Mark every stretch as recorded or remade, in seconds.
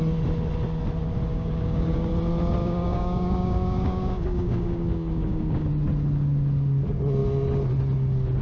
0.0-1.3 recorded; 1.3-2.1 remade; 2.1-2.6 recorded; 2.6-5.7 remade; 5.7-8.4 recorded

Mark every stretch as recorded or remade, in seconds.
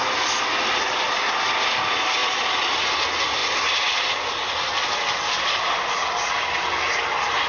0.0-7.5 recorded